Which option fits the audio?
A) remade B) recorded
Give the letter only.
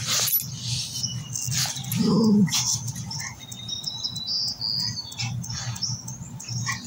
B